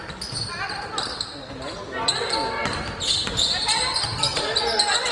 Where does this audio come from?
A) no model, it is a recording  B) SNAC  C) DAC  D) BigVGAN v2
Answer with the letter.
A